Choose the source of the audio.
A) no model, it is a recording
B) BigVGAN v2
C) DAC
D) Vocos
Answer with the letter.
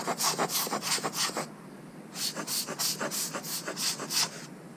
A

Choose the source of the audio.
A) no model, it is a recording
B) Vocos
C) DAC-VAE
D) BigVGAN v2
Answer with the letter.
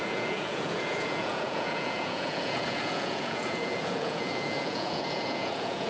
B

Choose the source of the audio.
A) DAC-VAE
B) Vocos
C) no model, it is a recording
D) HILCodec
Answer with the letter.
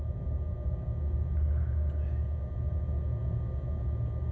C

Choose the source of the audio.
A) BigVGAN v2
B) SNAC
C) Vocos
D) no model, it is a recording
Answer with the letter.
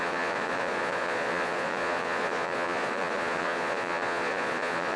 C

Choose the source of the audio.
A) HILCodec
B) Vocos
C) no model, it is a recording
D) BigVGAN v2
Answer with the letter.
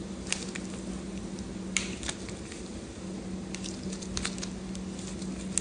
C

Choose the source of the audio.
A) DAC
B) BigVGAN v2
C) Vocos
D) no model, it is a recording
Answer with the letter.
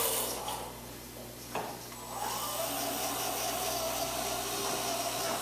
D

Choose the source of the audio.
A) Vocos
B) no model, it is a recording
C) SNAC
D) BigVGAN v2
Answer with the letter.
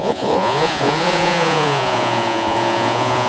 A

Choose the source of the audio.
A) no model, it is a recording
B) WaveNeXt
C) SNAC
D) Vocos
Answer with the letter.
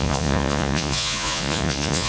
D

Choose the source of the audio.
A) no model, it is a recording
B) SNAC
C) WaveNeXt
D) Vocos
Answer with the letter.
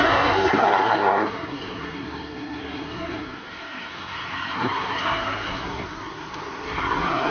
B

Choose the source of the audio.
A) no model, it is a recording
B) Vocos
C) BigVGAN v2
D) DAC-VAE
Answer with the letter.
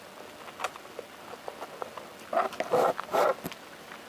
A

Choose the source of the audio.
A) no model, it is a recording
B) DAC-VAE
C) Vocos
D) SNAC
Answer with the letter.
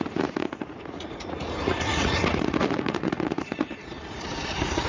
C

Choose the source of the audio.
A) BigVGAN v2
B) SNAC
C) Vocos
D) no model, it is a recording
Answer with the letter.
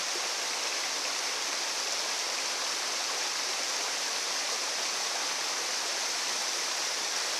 A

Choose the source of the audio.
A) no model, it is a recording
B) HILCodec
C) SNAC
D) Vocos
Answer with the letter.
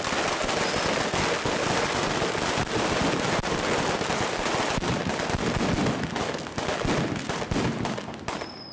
A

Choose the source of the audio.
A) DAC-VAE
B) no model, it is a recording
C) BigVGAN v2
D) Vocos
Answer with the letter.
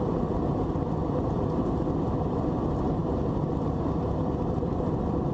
B